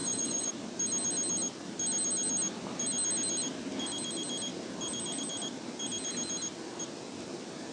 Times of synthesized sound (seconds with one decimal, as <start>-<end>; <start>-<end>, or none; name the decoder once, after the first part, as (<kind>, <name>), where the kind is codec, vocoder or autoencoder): 0.0-0.5 (vocoder, Vocos)